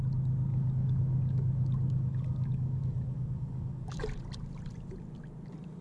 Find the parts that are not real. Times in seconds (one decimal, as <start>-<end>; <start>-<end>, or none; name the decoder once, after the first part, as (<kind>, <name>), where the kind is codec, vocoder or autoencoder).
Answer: 0.5-4.0 (codec, DAC)